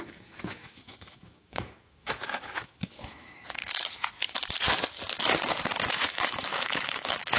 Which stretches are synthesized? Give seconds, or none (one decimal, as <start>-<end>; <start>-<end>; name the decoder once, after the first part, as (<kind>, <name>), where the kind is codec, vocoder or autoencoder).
0.0-3.6 (autoencoder, DAC-VAE); 5.9-7.4